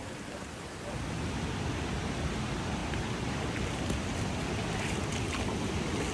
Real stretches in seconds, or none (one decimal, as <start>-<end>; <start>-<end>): 0.0-2.8; 3.5-6.1